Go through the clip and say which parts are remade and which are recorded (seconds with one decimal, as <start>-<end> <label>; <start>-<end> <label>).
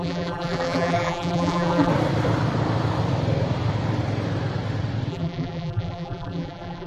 0.0-1.9 remade; 1.9-5.1 recorded; 5.1-6.9 remade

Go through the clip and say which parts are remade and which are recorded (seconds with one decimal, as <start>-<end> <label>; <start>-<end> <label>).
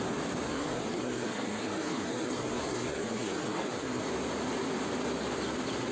0.0-0.5 recorded; 0.5-4.0 remade; 4.0-5.9 recorded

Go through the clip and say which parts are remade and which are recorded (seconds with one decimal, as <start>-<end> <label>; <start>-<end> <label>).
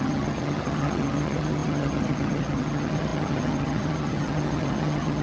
0.0-5.2 remade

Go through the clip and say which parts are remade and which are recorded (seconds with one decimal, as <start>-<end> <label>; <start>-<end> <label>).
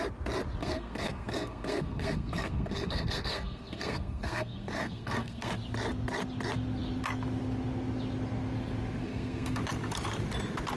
0.0-0.6 recorded; 0.6-5.5 remade; 5.5-9.0 recorded; 9.0-9.6 remade; 9.6-10.8 recorded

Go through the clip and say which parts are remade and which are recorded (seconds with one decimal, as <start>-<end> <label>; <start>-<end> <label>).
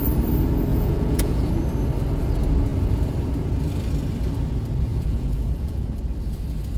0.0-0.7 recorded; 0.7-1.5 remade; 1.5-4.9 recorded; 4.9-5.9 remade; 5.9-6.8 recorded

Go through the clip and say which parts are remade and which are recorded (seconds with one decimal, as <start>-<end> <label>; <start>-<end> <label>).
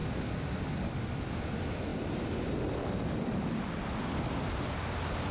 0.0-1.3 remade; 1.3-5.3 recorded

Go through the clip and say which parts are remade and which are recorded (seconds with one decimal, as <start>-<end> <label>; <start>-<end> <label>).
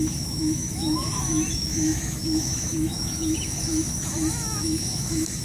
0.0-5.4 remade